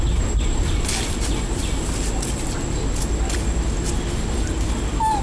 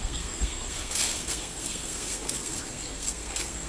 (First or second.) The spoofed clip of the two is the second